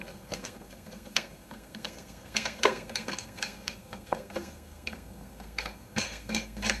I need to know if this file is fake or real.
fake